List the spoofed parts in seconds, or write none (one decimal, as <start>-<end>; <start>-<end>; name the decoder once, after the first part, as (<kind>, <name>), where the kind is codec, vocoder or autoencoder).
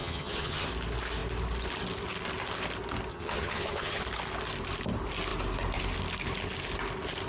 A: 0.0-0.7 (vocoder, HiFi-GAN); 3.1-4.0